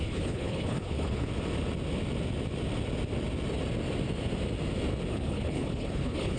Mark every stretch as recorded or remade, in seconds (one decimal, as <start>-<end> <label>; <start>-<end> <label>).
0.0-1.3 remade; 1.3-5.1 recorded; 5.1-6.4 remade